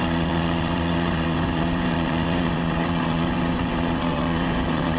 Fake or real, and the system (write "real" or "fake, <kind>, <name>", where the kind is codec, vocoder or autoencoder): fake, vocoder, Vocos